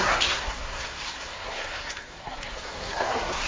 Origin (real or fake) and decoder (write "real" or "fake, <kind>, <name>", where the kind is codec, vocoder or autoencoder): fake, codec, SNAC